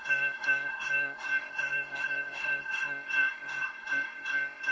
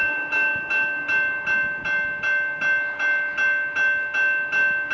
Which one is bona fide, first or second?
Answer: second